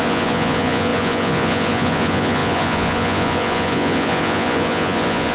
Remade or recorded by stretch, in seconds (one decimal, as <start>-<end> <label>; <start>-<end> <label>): 0.0-5.3 remade